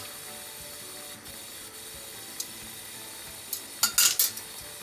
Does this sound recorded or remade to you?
recorded